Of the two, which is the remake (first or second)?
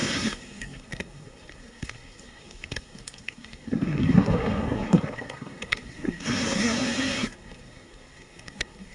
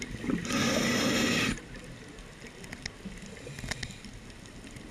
first